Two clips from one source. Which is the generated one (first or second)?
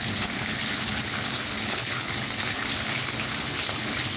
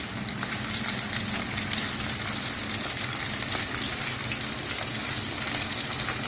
first